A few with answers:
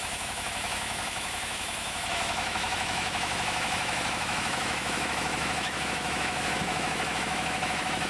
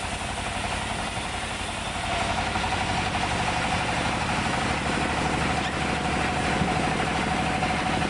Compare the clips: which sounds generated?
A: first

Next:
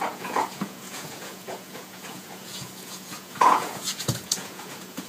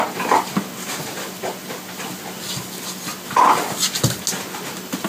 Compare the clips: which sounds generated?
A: first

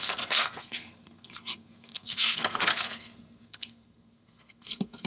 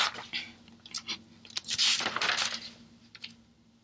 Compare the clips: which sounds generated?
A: first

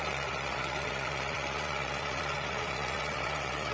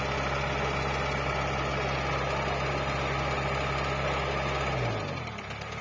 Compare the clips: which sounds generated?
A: first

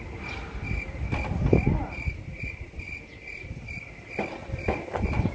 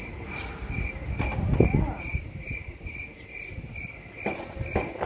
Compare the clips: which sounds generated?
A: first